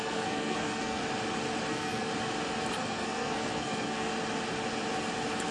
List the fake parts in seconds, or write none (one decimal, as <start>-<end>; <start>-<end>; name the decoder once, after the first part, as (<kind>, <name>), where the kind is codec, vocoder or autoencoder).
0.0-1.0 (codec, SNAC); 1.7-2.1; 2.7-4.1